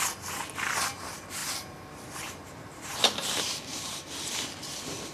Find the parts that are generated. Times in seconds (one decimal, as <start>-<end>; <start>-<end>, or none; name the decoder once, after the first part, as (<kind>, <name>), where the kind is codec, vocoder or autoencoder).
1.4-4.5 (vocoder, BigVGAN v2)